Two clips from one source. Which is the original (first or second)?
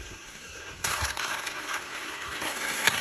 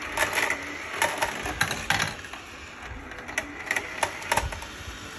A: second